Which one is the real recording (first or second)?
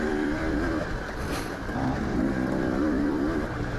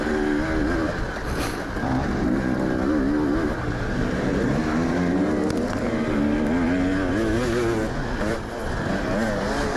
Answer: second